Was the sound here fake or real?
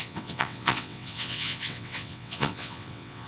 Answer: fake